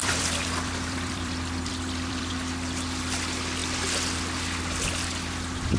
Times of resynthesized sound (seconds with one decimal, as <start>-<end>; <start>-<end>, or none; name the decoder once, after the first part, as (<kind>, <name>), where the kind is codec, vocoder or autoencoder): 0.0-2.3 (vocoder, BigVGAN v2)